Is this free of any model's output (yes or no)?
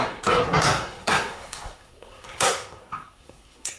no